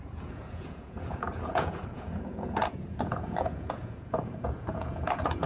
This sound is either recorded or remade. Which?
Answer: remade